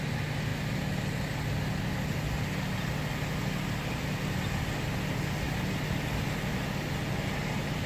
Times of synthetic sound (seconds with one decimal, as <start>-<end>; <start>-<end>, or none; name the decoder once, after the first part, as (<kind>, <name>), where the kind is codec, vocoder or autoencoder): none

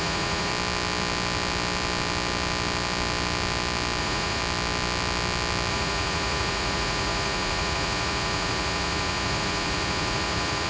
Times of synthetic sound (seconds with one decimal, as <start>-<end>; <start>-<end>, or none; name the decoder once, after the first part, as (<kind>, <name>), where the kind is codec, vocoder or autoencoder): 0.0-0.5 (vocoder, Vocos); 4.0-4.4; 5.7-10.7

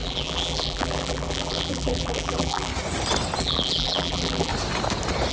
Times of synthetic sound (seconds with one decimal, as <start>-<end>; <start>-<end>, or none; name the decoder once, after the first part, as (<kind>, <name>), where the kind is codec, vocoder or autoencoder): 0.0-2.7 (vocoder, BigVGAN v2); 3.4-4.5